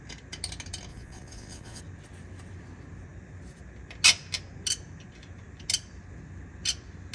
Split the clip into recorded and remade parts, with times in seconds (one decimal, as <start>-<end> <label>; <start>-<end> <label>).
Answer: 0.0-0.9 recorded; 0.9-1.8 remade; 1.8-7.1 recorded